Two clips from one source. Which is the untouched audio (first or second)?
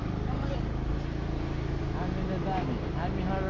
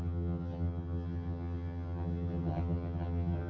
first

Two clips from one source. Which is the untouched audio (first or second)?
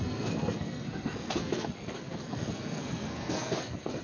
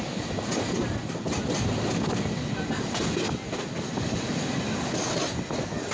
second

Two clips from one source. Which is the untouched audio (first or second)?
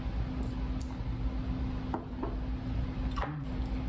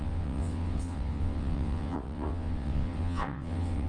first